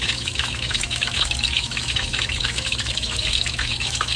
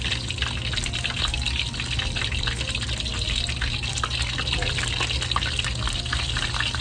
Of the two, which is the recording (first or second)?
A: second